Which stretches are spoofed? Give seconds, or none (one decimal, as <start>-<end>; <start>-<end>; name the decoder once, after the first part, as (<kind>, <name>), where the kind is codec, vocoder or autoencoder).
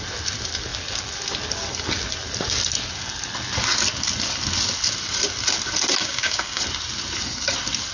6.0-6.6 (codec, DAC)